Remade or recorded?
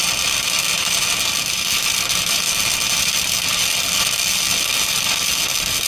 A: recorded